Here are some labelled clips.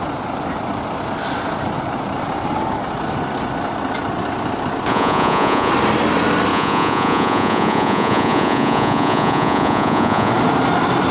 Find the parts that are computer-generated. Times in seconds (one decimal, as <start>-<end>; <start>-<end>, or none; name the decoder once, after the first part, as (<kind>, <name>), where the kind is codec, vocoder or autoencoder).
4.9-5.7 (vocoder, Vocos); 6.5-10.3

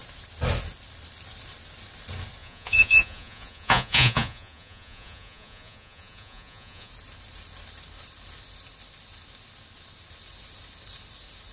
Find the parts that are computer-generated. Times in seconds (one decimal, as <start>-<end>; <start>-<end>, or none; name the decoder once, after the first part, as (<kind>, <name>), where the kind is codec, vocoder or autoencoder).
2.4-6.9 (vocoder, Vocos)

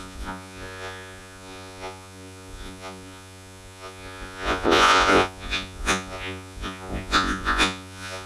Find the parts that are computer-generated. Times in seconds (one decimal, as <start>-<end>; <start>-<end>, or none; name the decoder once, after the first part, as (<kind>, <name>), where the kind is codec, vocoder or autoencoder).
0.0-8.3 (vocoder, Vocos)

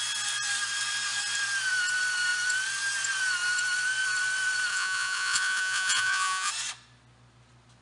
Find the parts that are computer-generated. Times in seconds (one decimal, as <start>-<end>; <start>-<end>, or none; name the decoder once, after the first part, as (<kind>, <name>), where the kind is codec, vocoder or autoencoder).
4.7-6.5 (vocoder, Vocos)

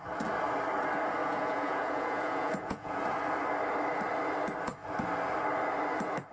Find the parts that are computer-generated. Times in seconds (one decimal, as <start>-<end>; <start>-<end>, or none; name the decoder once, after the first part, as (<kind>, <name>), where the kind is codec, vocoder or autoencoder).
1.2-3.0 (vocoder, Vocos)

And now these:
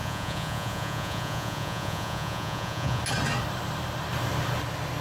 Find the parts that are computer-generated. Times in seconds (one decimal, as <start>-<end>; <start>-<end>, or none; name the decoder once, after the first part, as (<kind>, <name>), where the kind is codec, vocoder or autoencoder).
0.0-3.0 (vocoder, Vocos)

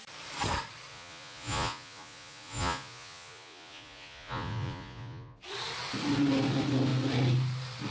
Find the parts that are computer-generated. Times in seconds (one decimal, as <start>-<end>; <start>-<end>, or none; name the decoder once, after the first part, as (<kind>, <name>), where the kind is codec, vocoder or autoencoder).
0.9-5.4 (vocoder, Vocos)

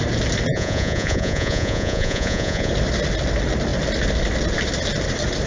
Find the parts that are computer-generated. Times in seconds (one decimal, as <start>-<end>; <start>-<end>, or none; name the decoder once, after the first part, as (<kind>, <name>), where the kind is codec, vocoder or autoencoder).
0.5-2.7 (vocoder, Vocos)